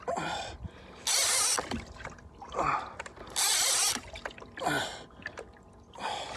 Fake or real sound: real